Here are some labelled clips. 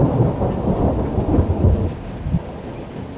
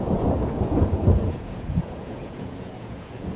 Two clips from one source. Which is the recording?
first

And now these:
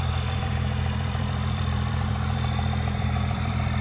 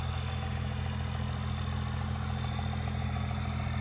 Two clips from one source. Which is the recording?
second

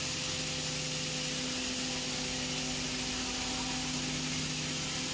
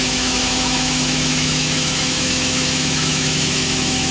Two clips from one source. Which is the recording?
first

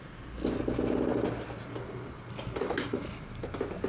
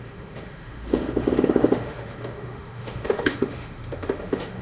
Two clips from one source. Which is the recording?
first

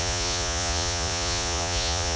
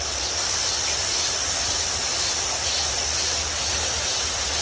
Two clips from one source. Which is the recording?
second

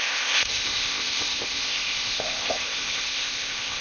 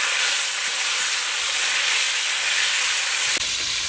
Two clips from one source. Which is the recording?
second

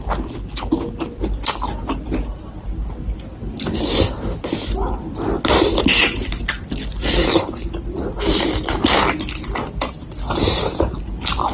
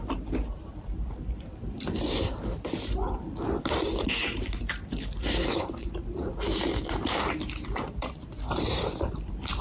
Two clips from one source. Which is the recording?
first